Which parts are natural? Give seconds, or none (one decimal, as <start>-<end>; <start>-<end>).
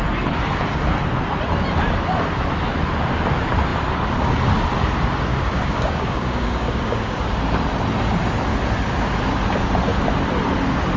0.0-5.3; 7.3-11.0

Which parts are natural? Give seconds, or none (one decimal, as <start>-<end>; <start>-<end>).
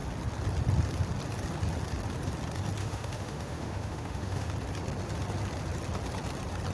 0.0-2.8; 4.5-6.7